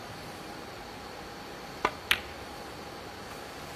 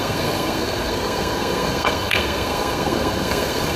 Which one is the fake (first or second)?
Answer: second